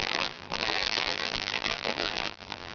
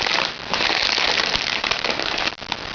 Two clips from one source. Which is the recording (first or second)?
second